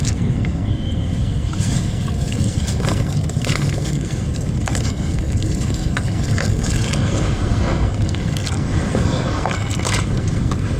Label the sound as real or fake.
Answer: fake